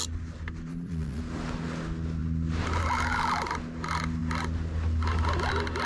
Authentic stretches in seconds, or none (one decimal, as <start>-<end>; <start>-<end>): 0.0-0.7; 1.2-5.9